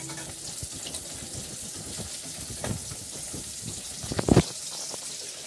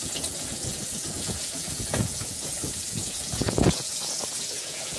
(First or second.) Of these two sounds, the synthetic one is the second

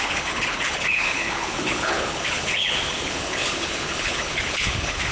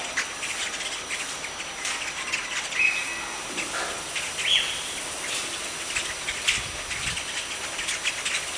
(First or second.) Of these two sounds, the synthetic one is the first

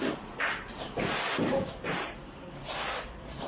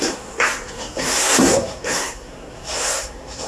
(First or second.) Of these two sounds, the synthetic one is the second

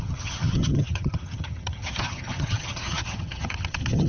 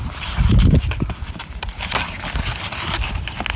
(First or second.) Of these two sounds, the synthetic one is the first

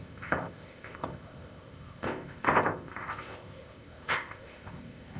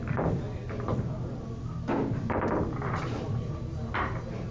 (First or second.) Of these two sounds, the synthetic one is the first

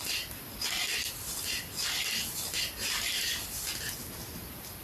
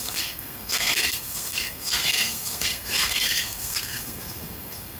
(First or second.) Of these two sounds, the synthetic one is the second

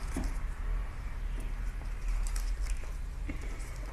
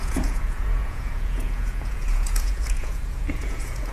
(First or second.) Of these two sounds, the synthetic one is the second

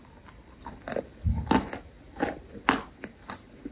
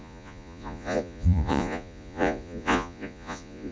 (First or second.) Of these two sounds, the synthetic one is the second